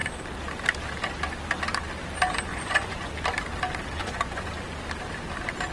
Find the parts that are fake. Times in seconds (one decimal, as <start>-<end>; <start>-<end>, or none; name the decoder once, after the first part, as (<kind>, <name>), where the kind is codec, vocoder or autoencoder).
2.5-3.1 (vocoder, Vocos); 4.0-4.5